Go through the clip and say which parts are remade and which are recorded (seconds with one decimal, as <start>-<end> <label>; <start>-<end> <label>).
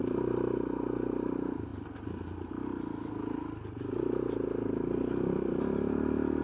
0.0-6.4 recorded